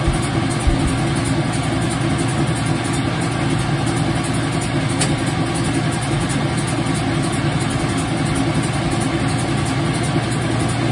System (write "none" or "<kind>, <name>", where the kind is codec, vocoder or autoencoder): none